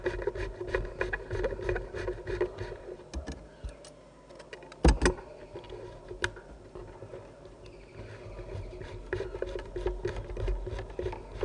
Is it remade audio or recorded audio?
recorded